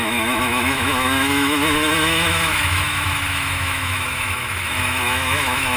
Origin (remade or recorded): remade